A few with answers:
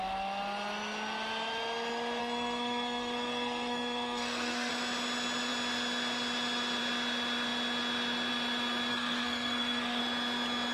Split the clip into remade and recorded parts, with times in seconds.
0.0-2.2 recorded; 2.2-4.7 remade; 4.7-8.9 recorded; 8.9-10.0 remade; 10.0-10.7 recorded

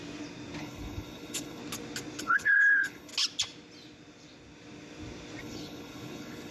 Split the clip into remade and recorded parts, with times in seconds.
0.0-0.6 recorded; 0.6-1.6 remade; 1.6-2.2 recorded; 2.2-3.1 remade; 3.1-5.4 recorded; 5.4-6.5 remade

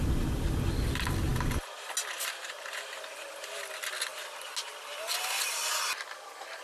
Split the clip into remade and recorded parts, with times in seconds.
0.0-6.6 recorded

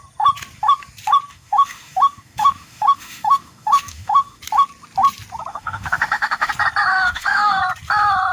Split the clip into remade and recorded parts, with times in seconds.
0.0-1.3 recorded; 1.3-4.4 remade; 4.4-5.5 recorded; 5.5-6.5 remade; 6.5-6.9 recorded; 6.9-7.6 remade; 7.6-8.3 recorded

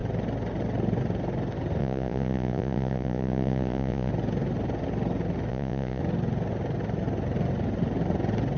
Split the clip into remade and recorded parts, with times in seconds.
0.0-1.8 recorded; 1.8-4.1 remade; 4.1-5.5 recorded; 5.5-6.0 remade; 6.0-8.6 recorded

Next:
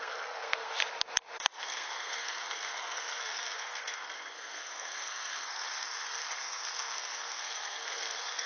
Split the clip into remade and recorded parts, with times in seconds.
0.0-0.8 remade; 0.8-1.6 recorded; 1.6-8.5 remade

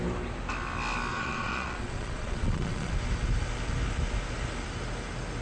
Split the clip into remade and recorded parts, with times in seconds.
0.0-1.1 recorded; 1.1-2.9 remade; 2.9-5.4 recorded